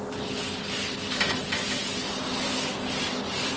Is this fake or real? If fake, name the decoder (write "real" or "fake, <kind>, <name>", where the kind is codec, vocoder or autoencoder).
real